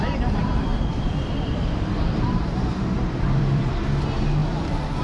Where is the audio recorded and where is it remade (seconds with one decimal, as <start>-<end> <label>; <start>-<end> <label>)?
0.0-0.7 recorded; 0.7-3.7 remade; 3.7-4.4 recorded; 4.4-5.0 remade